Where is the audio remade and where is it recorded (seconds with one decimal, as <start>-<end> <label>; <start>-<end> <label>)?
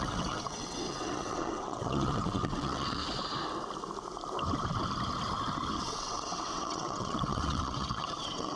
0.0-3.0 remade; 3.0-5.8 recorded; 5.8-8.6 remade